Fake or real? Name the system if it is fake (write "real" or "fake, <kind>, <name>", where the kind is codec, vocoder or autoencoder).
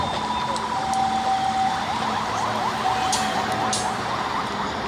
real